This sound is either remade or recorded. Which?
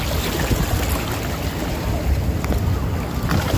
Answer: recorded